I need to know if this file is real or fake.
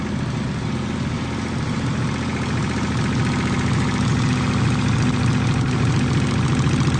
real